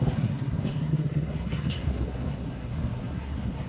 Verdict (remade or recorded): remade